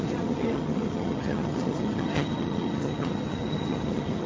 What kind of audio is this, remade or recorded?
remade